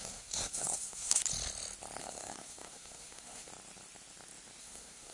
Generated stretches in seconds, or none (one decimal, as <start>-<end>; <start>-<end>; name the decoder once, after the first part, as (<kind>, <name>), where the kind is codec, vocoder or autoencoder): 0.0-1.2 (codec, SNAC); 2.0-3.5; 4.6-5.1